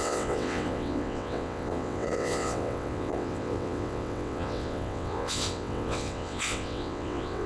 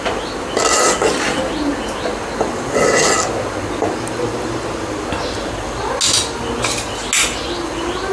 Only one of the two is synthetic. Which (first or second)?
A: first